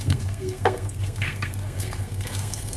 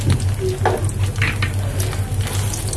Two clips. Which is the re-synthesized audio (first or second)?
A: first